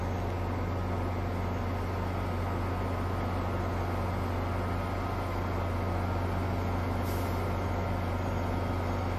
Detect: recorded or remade recorded